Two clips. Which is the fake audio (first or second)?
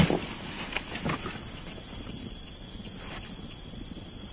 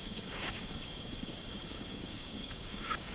second